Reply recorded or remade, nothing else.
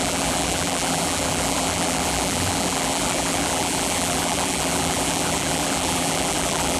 remade